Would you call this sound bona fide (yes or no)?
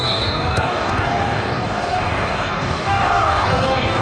no